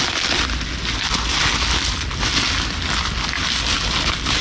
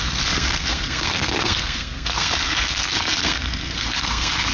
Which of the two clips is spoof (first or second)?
second